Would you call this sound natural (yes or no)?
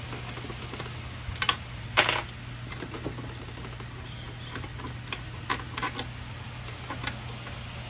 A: yes